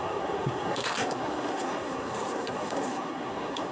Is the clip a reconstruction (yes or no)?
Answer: yes